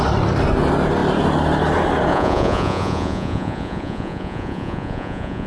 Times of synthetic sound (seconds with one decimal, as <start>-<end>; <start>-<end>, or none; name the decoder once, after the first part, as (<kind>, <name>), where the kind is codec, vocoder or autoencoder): 2.1-5.5 (vocoder, Vocos)